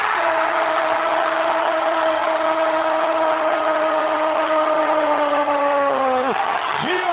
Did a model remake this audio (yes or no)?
yes